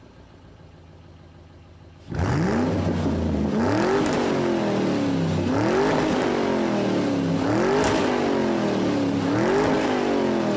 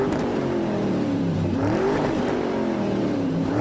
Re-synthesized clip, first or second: second